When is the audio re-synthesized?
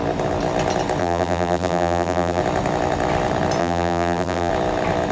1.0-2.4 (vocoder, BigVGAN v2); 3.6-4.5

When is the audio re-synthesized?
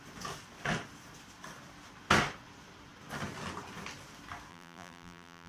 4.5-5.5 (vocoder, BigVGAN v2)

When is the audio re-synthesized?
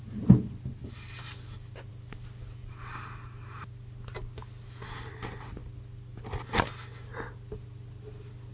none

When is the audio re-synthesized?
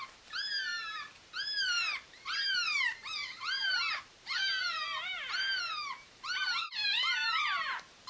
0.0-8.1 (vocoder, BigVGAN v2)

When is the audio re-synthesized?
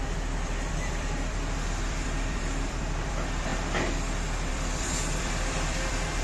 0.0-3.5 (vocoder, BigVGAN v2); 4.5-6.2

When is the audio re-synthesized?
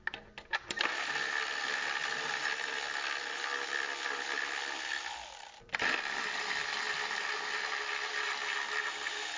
4.6-7.1 (vocoder, BigVGAN v2)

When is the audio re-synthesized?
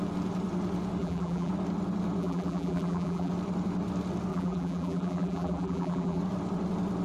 1.0-1.5 (vocoder, BigVGAN v2); 2.2-3.3; 4.3-6.2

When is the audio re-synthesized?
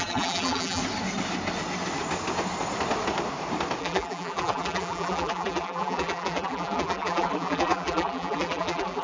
0.0-0.8 (vocoder, BigVGAN v2); 3.8-9.0